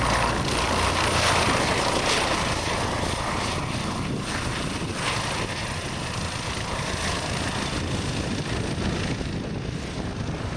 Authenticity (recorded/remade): recorded